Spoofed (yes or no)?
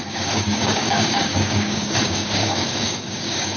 yes